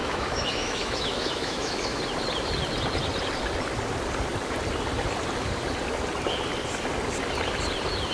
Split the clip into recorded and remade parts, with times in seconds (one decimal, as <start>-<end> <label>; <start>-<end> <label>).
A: 0.0-2.0 remade; 2.0-8.1 recorded